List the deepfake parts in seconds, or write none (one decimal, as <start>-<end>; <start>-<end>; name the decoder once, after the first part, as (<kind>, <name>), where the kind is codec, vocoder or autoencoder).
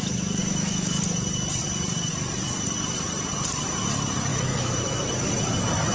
0.4-1.0 (autoencoder, DAC-VAE); 4.3-5.3